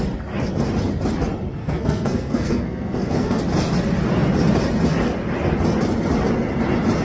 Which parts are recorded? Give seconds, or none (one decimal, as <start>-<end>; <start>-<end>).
0.0-1.6; 3.4-7.0